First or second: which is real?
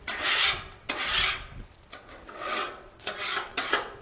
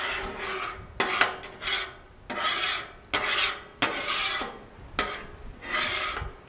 second